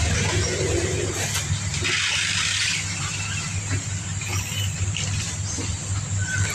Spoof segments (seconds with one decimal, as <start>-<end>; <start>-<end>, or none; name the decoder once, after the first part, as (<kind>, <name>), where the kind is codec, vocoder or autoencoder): none